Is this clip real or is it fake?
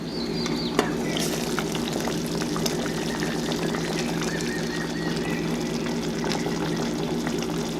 real